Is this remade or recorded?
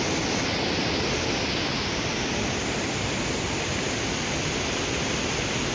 recorded